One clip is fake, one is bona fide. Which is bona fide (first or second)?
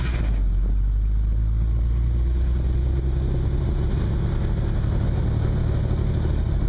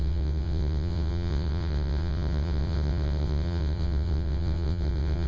first